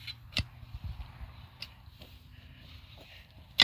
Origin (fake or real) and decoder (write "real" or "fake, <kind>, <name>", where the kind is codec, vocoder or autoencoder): real